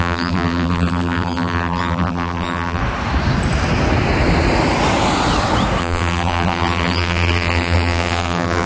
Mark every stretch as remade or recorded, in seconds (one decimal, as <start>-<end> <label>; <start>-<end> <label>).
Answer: 0.0-2.8 remade; 2.8-5.8 recorded; 5.8-8.7 remade